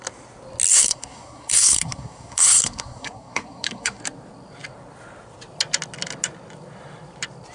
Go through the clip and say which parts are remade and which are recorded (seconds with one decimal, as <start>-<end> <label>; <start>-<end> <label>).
0.0-0.7 recorded; 0.7-4.0 remade; 4.0-7.5 recorded